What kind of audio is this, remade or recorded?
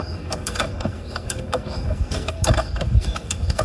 remade